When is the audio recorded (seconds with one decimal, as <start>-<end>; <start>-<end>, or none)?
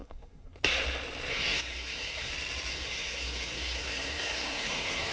0.6-1.3; 2.3-2.7